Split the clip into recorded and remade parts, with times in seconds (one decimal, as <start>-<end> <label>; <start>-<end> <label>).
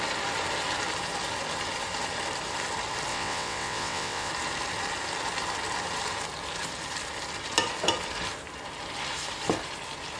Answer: 0.0-3.1 recorded; 3.1-4.3 remade; 4.3-10.2 recorded